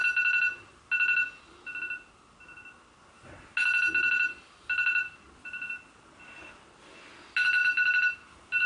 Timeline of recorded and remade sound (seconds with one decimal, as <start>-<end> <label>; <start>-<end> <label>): 0.0-4.9 recorded; 4.9-5.7 remade; 5.7-8.7 recorded